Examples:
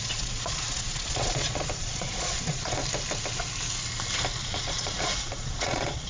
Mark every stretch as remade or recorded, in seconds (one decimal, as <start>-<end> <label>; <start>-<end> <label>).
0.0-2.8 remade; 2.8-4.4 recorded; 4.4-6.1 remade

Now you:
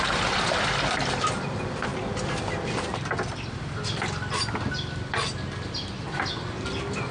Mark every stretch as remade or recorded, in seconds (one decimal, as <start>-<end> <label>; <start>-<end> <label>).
0.0-7.1 recorded

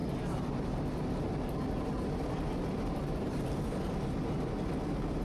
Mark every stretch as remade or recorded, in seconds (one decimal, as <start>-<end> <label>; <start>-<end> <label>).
0.0-5.2 recorded

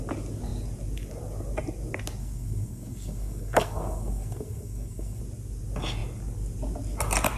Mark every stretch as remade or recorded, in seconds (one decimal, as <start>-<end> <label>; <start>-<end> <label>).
0.0-2.2 recorded; 2.2-5.2 remade; 5.2-7.4 recorded

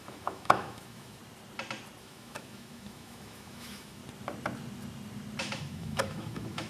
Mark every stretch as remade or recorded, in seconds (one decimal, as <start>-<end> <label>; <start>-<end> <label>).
0.0-1.2 remade; 1.2-2.0 recorded; 2.0-4.0 remade; 4.0-5.4 recorded; 5.4-6.7 remade